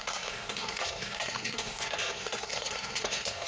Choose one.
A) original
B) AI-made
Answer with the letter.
B